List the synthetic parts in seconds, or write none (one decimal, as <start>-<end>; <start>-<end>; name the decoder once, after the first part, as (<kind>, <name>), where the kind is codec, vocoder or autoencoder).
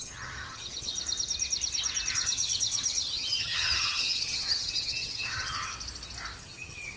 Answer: 0.0-0.9 (vocoder, HiFi-GAN); 2.1-5.7; 6.4-7.0